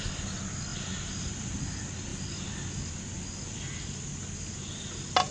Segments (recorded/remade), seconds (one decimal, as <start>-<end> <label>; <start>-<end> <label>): 0.0-5.3 recorded